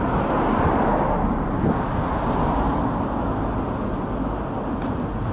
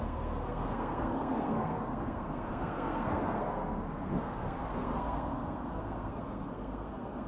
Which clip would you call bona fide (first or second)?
first